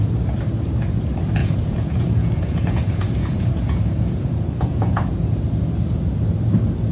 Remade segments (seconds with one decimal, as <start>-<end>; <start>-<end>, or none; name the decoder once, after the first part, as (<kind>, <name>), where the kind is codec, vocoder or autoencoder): 1.4-5.5 (vocoder, Vocos)